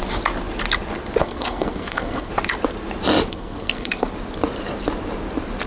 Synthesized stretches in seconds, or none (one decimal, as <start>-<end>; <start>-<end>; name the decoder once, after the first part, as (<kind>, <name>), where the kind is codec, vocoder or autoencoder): 1.2-2.3 (codec, SNAC); 3.3-4.1